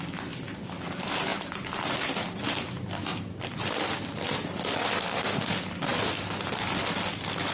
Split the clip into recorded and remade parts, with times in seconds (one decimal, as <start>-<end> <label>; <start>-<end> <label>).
0.0-1.3 recorded; 1.3-1.8 remade; 1.8-3.1 recorded; 3.1-4.2 remade; 4.2-5.9 recorded; 5.9-6.8 remade; 6.8-7.5 recorded